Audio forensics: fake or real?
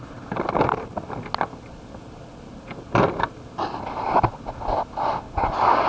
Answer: real